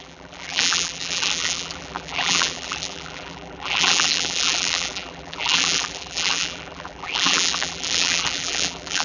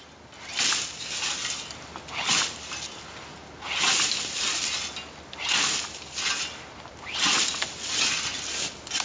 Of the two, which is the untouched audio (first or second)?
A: second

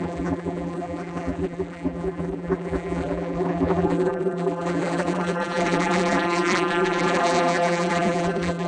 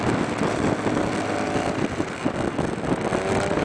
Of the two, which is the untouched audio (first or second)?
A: second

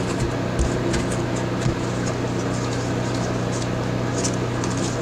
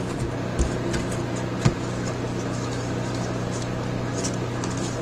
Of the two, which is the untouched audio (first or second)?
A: first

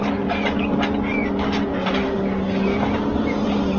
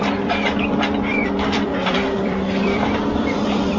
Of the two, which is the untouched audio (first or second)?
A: first